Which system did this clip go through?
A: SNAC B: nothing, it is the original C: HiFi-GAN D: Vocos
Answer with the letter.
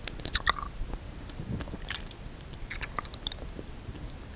B